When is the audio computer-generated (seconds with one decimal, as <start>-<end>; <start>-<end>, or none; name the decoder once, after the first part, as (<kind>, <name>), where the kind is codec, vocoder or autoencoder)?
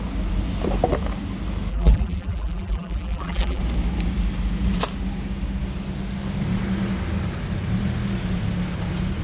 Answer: 1.7-3.6 (vocoder, BigVGAN v2)